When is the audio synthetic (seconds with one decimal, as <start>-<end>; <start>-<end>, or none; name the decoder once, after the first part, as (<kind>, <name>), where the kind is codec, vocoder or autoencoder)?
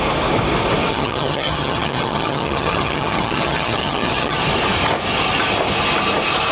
0.9-4.4 (vocoder, HiFi-GAN)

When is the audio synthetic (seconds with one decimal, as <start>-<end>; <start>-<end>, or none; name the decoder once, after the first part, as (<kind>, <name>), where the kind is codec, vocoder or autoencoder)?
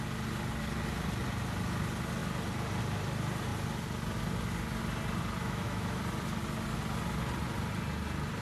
5.4-6.0 (autoencoder, DAC-VAE)